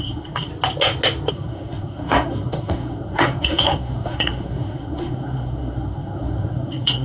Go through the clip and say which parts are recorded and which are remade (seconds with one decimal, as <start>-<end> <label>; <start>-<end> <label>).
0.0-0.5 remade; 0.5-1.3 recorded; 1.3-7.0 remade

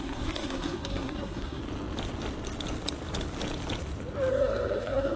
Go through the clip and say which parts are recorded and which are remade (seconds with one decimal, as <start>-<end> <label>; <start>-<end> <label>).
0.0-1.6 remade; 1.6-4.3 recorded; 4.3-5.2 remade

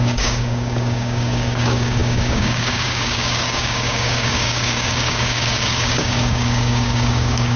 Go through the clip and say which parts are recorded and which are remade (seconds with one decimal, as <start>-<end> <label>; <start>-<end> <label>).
0.0-7.6 remade

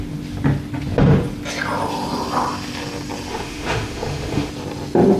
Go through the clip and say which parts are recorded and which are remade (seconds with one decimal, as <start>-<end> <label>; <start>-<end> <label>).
0.0-3.3 recorded; 3.3-4.5 remade; 4.5-5.2 recorded

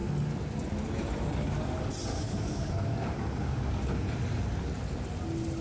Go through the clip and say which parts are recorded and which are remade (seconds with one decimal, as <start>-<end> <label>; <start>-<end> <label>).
0.0-2.1 recorded; 2.1-3.8 remade; 3.8-5.6 recorded

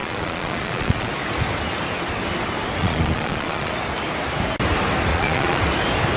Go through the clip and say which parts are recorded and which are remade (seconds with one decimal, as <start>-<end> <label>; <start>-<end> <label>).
0.0-1.1 remade; 1.1-2.8 recorded; 2.8-3.7 remade; 3.7-5.1 recorded; 5.1-5.6 remade; 5.6-6.2 recorded